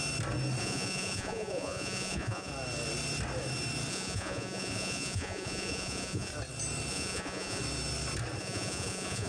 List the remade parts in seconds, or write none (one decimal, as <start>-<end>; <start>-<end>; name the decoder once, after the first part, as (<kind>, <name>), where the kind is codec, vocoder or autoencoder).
0.6-2.5 (vocoder, Vocos); 3.9-6.3; 6.9-7.6; 8.4-9.3